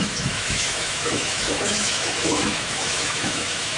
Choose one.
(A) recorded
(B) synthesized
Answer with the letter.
B